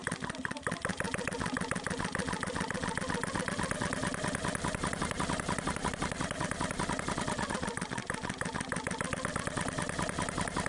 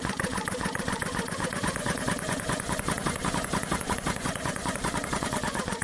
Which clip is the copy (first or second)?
second